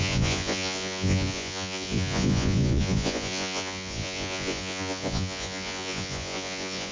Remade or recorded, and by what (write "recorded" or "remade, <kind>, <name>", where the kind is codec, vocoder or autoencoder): remade, vocoder, Vocos